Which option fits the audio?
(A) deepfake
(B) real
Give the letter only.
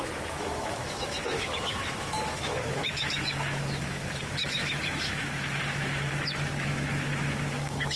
A